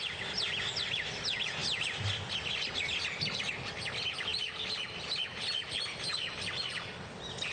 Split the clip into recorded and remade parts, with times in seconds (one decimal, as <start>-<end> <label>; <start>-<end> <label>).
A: 0.0-7.5 recorded